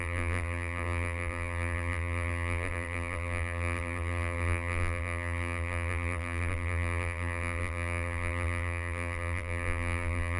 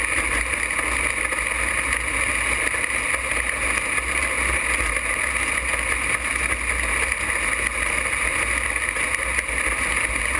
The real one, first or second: second